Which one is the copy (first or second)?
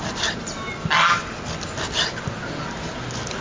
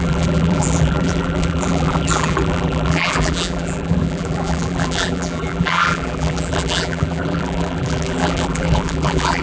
second